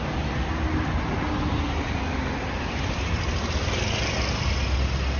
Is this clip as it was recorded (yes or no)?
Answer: yes